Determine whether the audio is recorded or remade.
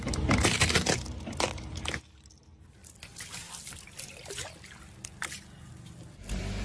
recorded